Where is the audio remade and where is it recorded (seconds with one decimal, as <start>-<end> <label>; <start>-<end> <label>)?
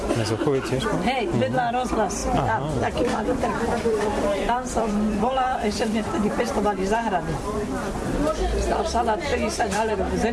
0.0-2.2 recorded; 2.2-6.5 remade; 6.5-9.3 recorded; 9.3-9.9 remade; 9.9-10.3 recorded